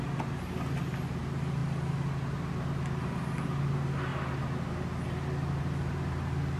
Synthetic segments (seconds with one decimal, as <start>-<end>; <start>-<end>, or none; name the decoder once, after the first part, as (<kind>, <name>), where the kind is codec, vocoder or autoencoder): 0.0-1.6 (vocoder, BigVGAN v2); 2.4-4.1; 5.6-6.6